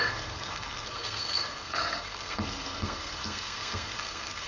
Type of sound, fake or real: fake